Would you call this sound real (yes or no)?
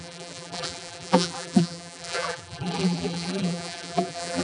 no